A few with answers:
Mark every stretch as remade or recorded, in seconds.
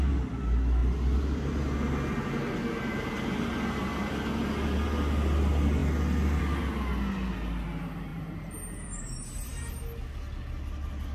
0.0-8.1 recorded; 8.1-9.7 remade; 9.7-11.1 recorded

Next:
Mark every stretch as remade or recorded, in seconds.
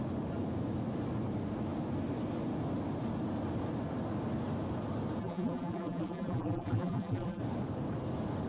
0.0-5.2 recorded; 5.2-7.4 remade; 7.4-8.5 recorded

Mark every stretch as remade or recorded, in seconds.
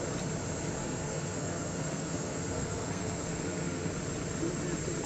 0.0-0.8 recorded; 0.8-3.9 remade; 3.9-5.1 recorded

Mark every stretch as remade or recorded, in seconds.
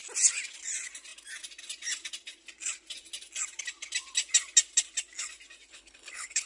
0.0-5.7 recorded; 5.7-6.5 remade